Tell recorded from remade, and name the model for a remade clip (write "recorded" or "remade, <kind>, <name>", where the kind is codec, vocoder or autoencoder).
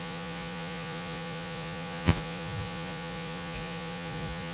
remade, vocoder, Vocos